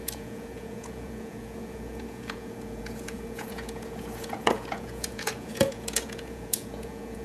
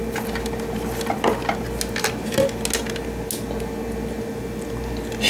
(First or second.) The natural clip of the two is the second